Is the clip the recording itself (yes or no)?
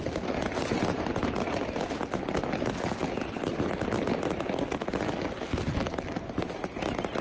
yes